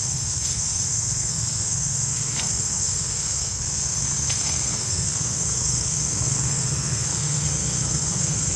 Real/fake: fake